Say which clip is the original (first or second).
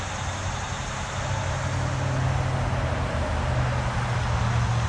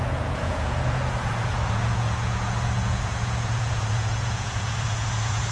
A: first